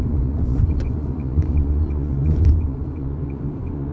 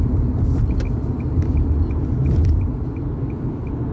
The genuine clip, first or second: second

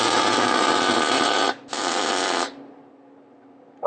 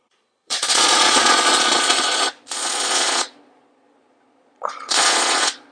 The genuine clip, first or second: first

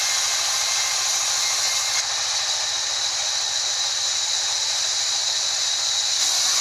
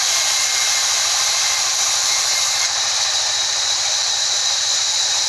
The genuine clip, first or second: first